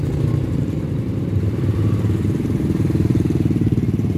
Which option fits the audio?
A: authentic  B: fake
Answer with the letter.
B